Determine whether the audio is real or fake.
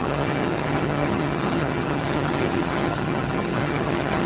fake